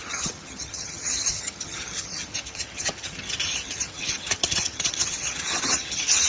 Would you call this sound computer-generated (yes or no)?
yes